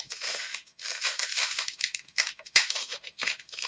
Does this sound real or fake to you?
fake